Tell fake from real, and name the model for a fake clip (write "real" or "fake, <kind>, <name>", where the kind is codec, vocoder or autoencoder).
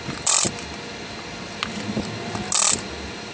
real